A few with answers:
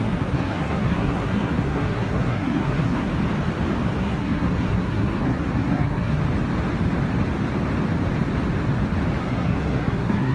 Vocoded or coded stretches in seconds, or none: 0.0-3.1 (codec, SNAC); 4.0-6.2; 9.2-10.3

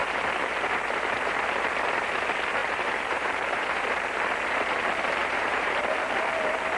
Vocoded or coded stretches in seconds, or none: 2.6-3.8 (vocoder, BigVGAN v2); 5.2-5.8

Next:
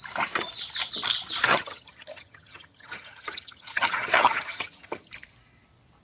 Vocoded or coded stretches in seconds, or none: 1.5-5.1 (vocoder, HiFi-GAN)

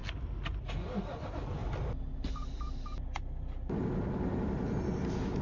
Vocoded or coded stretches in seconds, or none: none

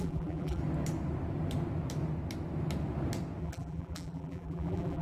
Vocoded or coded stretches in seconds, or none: 0.0-0.6 (vocoder, BigVGAN v2); 3.4-5.0

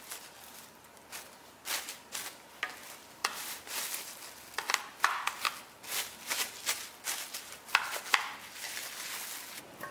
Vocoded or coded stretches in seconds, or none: 3.2-4.2 (vocoder, BigVGAN v2)

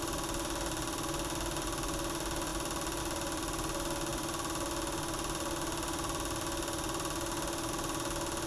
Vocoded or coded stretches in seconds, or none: none

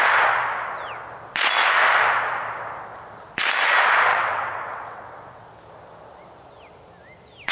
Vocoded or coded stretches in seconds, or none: 4.1-5.4 (vocoder, WaveNeXt)